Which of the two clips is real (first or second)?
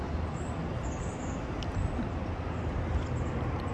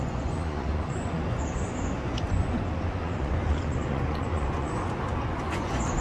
first